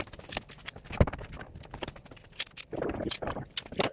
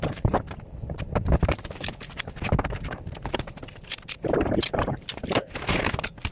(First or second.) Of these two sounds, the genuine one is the first